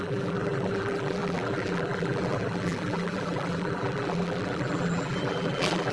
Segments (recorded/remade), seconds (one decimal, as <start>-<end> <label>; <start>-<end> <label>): 0.0-5.9 remade